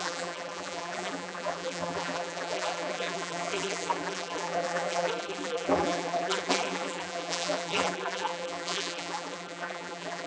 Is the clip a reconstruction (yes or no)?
yes